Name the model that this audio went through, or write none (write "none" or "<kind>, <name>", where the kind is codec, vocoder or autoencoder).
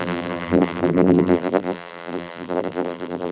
vocoder, BigVGAN v2